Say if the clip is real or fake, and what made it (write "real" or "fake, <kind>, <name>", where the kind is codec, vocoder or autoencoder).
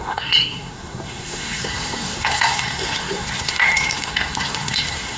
fake, codec, SNAC